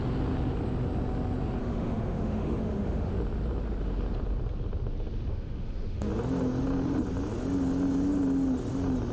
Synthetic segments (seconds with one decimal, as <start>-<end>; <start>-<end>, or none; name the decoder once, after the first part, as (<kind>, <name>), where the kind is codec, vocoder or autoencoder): 1.6-3.1 (autoencoder, DAC-VAE); 5.3-6.1